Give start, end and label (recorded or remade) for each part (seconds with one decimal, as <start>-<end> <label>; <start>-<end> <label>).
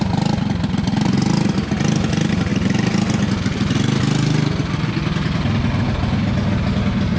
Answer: 0.0-7.2 recorded